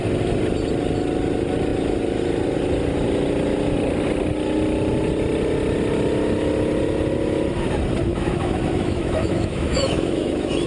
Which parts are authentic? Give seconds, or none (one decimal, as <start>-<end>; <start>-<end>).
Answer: 0.0-8.1